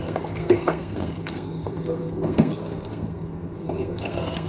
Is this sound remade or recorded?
remade